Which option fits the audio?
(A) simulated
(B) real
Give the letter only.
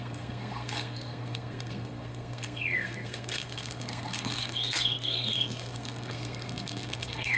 A